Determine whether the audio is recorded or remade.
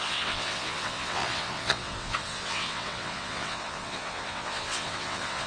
remade